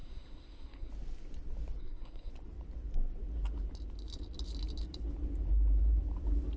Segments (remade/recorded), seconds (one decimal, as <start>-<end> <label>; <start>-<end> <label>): 0.0-0.9 remade; 0.9-1.8 recorded; 1.8-2.3 remade; 2.3-6.6 recorded